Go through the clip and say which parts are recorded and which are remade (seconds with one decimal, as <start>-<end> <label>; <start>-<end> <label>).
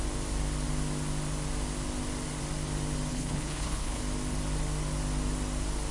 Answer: 0.0-3.1 recorded; 3.1-4.0 remade; 4.0-5.9 recorded